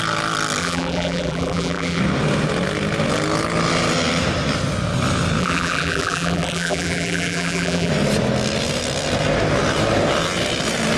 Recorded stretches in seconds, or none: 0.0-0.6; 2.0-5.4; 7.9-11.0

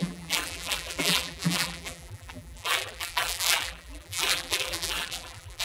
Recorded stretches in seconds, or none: none

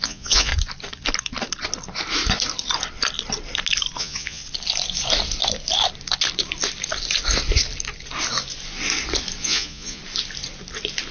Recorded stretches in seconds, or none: 0.5-4.0; 4.4-9.4; 10.0-11.1

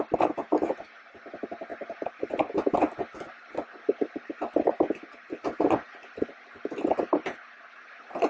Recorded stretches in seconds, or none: 0.0-1.7; 2.3-8.3

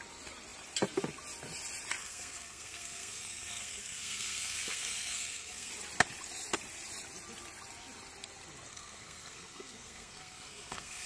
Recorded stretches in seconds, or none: 0.0-2.0; 5.7-8.7

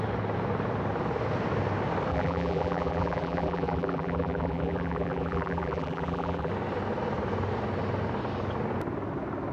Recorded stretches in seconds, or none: 0.0-2.1; 6.5-9.5

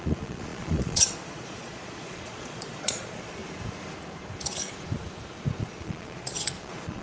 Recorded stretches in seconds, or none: 3.4-5.6

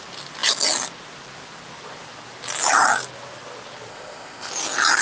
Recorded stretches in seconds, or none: 0.0-3.9; 4.5-5.0